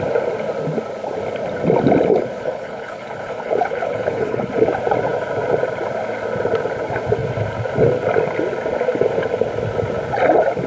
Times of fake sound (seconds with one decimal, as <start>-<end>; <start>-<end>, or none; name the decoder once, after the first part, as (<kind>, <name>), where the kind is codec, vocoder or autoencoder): 2.1-4.5 (codec, HILCodec)